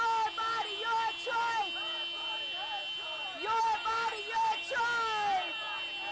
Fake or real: real